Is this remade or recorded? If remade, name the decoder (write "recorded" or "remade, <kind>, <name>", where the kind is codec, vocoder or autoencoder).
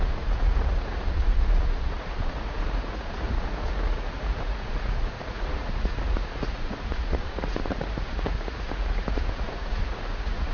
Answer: remade, vocoder, Vocos